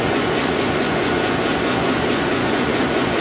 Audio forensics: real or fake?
fake